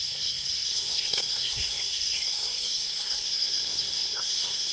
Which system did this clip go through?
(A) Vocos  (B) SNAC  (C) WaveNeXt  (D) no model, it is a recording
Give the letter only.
B